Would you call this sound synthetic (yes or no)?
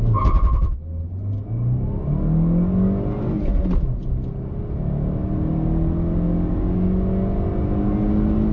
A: no